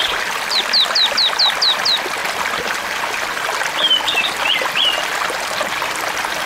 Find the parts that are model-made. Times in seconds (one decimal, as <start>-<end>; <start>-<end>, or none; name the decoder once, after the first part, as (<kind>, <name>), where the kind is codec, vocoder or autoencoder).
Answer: none